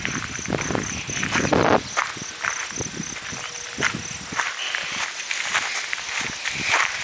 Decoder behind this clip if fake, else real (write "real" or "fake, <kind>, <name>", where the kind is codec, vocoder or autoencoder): real